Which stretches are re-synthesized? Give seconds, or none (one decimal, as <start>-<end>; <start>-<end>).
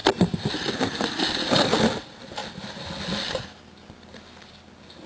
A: none